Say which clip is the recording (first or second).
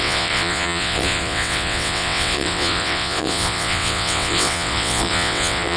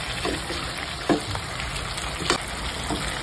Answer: second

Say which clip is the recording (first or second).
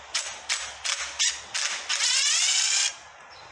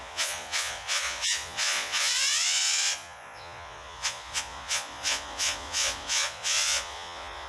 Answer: first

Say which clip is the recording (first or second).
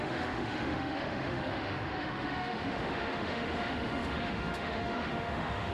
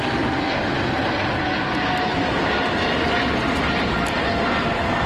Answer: second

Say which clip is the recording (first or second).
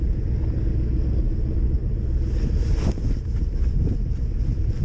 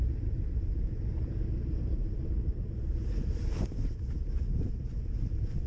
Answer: first